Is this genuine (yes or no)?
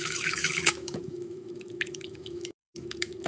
no